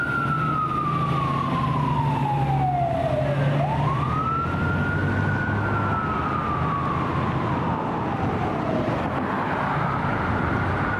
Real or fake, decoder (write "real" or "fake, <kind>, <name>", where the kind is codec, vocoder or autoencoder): real